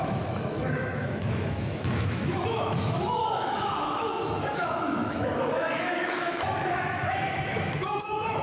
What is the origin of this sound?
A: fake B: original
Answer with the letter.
A